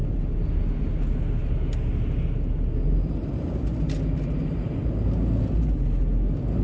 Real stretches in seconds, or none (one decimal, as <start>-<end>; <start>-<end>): 0.8-3.7; 4.4-6.6